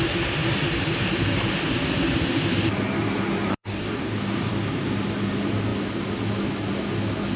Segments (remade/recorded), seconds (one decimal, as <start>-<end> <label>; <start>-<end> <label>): 0.0-3.5 recorded; 3.5-4.5 remade; 4.5-7.4 recorded